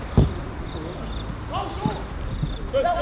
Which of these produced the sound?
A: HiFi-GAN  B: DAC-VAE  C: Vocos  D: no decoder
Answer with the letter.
D